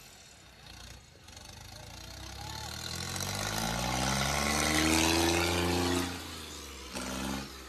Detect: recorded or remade recorded